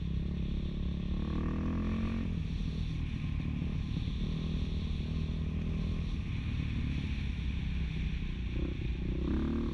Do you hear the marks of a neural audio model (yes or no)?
no